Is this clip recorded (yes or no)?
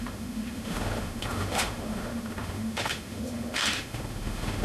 no